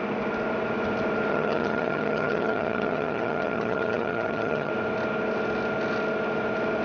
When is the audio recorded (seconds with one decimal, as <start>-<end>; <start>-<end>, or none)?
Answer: 0.0-1.3; 4.7-6.8